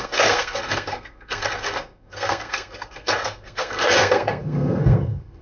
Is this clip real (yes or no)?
no